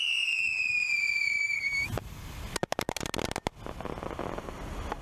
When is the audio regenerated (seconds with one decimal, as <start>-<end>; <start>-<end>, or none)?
0.7-2.1